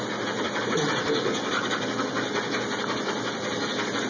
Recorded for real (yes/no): yes